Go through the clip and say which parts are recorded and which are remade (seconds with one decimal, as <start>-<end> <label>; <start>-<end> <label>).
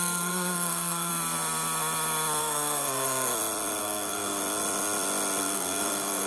0.0-1.1 remade; 1.1-2.4 recorded; 2.4-3.3 remade; 3.3-3.8 recorded; 3.8-4.4 remade; 4.4-5.4 recorded; 5.4-6.3 remade